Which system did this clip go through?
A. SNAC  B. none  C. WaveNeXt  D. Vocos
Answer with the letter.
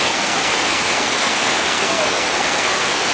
A